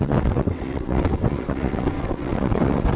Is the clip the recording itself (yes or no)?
no